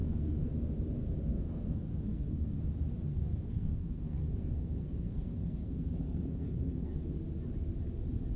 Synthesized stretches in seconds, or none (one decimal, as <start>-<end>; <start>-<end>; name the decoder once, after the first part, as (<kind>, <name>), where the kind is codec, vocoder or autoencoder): 0.0-0.5 (codec, SNAC); 1.3-2.6; 3.1-7.0